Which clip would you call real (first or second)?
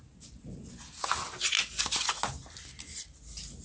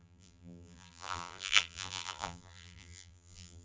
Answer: first